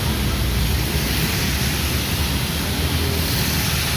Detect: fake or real real